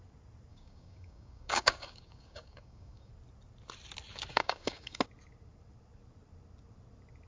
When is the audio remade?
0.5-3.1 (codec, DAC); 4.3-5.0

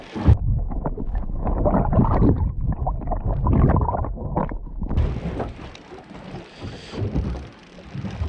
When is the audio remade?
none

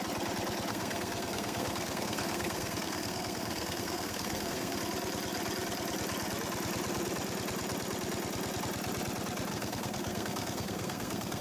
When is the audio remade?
0.7-4.8 (codec, SNAC); 9.5-11.4